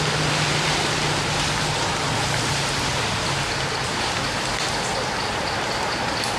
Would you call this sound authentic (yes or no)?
yes